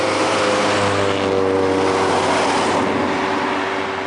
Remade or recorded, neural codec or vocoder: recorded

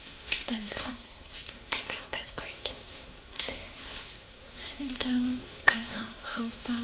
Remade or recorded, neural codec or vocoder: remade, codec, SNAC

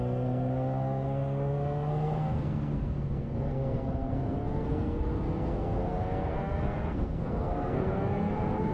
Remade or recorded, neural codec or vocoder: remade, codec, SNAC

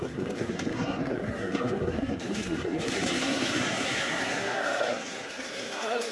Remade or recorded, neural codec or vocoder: remade, codec, SNAC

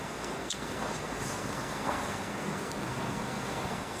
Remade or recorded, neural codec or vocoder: remade, codec, SNAC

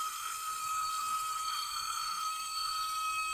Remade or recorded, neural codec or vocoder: remade, codec, SNAC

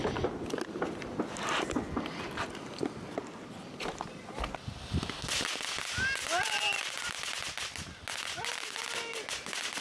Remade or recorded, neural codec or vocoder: recorded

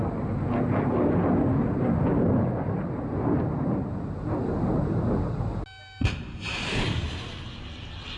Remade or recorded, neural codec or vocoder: recorded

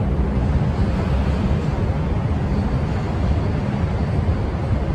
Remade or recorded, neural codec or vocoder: recorded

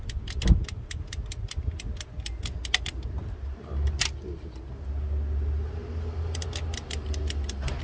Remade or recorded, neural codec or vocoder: recorded